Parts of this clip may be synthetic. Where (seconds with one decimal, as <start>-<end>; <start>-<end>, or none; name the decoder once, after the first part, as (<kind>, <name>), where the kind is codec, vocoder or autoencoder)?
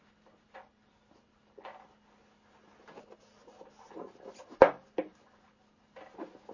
none